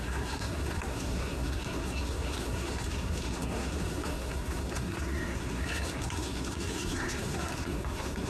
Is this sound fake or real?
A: fake